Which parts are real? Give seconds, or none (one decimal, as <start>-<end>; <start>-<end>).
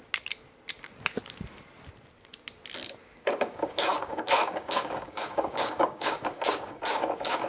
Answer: 0.0-3.0